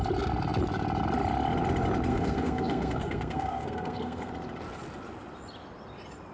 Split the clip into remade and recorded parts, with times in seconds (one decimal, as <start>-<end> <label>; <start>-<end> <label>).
0.0-2.1 recorded; 2.1-4.3 remade; 4.3-6.3 recorded